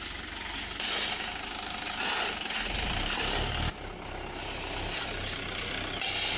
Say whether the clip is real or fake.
real